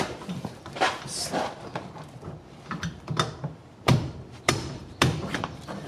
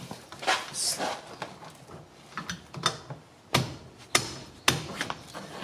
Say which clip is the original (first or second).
second